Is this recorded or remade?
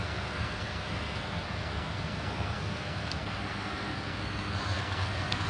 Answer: remade